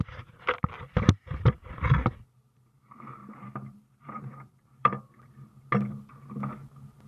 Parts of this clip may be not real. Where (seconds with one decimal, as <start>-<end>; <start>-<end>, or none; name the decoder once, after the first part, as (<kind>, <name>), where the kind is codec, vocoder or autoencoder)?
3.2-5.0 (vocoder, BigVGAN v2)